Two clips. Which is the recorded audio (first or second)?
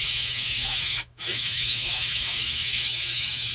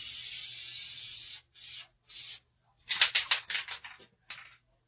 second